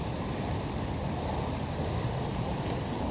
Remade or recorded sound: recorded